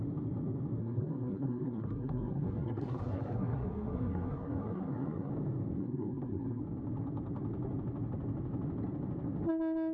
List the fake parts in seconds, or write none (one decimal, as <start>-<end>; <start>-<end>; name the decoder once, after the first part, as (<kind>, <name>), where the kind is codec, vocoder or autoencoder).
0.8-5.3 (codec, SNAC); 5.8-6.6

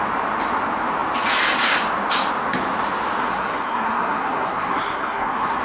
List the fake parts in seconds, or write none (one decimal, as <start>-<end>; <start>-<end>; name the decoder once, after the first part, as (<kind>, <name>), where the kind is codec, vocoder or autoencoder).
3.2-5.6 (codec, SNAC)

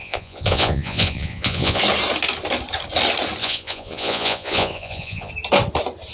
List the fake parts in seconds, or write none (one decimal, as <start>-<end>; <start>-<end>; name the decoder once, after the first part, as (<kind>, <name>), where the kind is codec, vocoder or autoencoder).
0.0-1.8 (vocoder, Vocos); 3.4-5.3

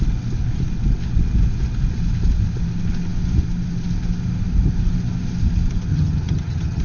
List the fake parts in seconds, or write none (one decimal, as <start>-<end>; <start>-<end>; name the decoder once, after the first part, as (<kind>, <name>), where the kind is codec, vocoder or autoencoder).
5.9-6.8 (vocoder, HiFi-GAN)

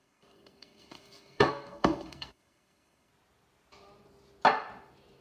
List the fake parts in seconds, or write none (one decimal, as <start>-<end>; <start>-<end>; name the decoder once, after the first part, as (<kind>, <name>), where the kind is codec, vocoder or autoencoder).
0.0-3.1 (codec, SNAC)